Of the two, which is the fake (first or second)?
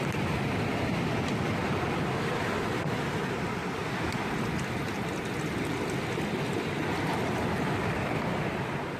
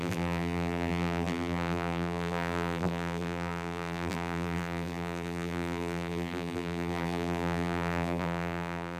second